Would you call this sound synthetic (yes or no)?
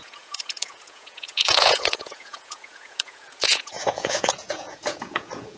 yes